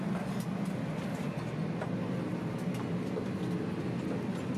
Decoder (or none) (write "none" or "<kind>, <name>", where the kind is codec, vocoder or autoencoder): none